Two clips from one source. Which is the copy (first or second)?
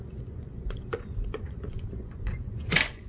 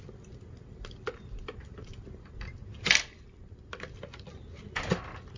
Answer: first